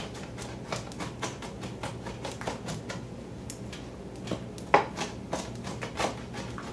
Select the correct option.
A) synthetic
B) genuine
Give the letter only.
B